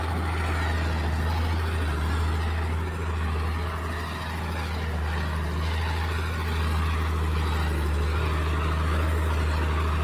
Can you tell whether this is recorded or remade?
recorded